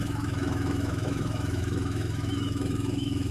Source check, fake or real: fake